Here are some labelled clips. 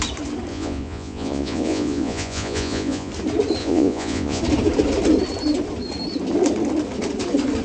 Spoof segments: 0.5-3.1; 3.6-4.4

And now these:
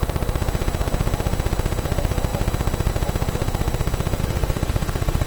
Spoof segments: 4.2-5.3

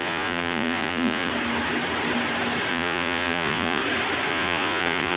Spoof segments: 0.0-1.3; 2.7-3.8; 4.3-5.2

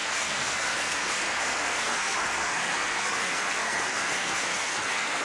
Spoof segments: 0.0-5.2

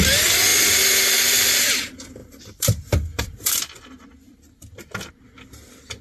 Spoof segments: 0.5-1.5; 2.2-5.1